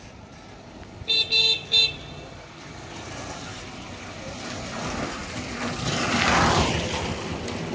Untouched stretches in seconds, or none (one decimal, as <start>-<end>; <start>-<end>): 0.0-7.7